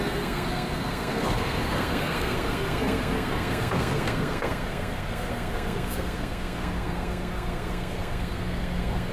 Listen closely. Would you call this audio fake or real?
fake